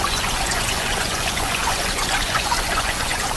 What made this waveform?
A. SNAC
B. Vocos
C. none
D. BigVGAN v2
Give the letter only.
B